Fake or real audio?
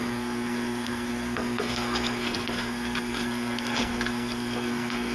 fake